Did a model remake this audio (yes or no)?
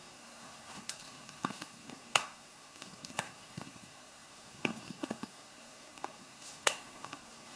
yes